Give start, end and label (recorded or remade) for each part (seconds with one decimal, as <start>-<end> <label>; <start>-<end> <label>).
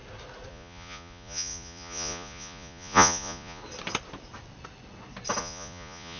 0.0-0.5 recorded; 0.5-3.6 remade; 3.6-5.4 recorded; 5.4-6.2 remade